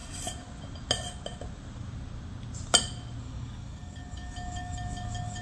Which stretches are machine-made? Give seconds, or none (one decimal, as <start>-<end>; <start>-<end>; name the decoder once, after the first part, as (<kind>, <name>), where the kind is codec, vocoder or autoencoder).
3.2-5.4 (codec, DAC)